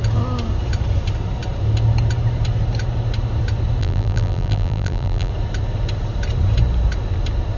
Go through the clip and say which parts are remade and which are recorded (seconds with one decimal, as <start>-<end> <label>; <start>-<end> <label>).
0.0-3.8 recorded; 3.8-5.3 remade; 5.3-7.6 recorded